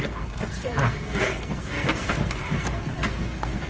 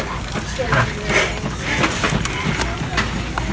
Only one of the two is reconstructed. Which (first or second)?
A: first